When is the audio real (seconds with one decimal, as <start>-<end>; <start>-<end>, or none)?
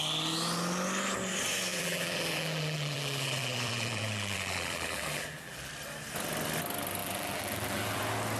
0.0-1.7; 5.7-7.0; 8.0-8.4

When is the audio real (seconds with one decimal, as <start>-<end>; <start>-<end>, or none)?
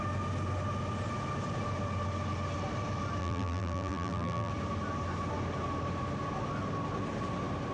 0.0-3.2; 4.5-7.7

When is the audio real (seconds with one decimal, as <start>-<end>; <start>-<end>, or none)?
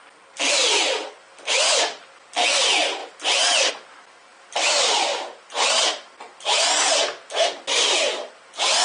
0.0-8.8